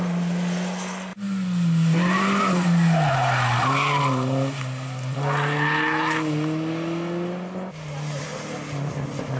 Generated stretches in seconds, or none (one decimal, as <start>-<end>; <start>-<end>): none